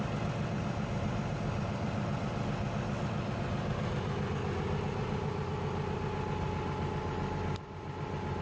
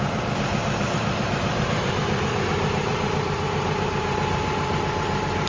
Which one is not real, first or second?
second